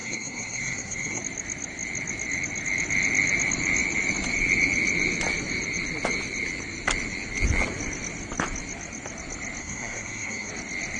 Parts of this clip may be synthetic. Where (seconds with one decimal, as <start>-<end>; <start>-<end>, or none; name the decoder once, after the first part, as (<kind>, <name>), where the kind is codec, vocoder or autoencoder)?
0.0-1.2 (codec, SNAC); 9.6-10.5